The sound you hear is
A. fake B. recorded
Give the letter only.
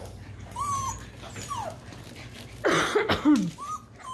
B